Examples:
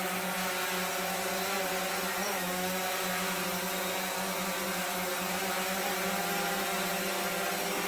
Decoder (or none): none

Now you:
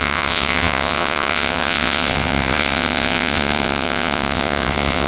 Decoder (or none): vocoder, WaveNeXt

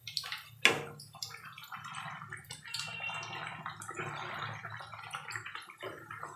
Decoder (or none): none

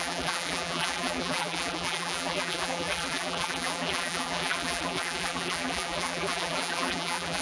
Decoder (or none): vocoder, BigVGAN v2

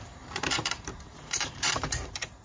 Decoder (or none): vocoder, BigVGAN v2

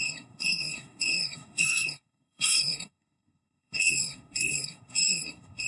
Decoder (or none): codec, SNAC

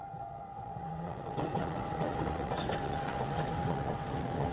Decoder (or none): vocoder, WaveNeXt